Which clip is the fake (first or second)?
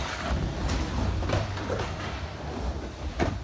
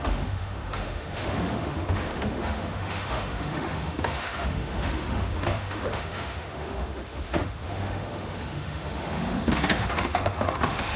second